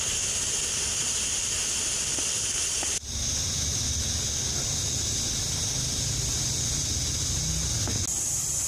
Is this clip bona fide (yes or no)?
yes